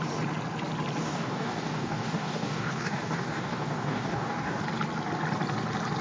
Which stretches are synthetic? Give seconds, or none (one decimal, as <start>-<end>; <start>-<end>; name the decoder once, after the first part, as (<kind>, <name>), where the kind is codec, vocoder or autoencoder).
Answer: 1.0-4.6 (codec, DAC)